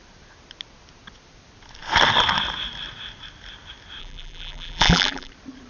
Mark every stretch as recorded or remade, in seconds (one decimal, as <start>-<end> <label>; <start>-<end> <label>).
0.0-4.0 recorded; 4.0-5.3 remade; 5.3-5.7 recorded